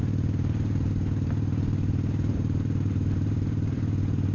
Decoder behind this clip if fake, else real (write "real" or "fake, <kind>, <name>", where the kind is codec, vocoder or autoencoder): fake, vocoder, BigVGAN v2